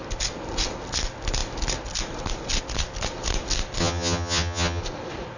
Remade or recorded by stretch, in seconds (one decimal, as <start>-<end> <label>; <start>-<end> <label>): 0.0-3.8 recorded; 3.8-4.8 remade; 4.8-5.4 recorded